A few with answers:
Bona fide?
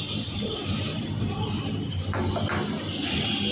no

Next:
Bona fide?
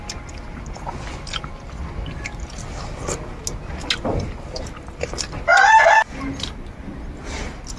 yes